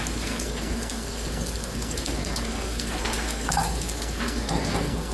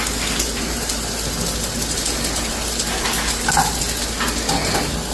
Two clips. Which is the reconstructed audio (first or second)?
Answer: first